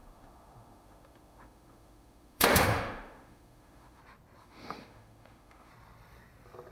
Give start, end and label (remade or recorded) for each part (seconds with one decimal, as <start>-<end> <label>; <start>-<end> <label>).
0.0-4.0 remade; 4.0-4.4 recorded; 4.4-5.7 remade; 5.7-6.7 recorded